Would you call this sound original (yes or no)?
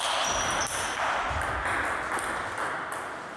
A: yes